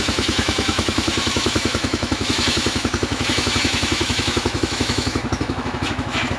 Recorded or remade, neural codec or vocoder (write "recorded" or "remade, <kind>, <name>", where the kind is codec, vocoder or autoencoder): remade, autoencoder, DAC-VAE